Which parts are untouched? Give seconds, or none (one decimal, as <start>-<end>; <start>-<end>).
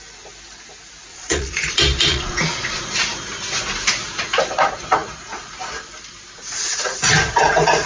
0.0-1.1; 1.7-2.1; 2.8-7.9